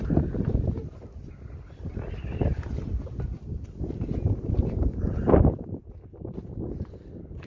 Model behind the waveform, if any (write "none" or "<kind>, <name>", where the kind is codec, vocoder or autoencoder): none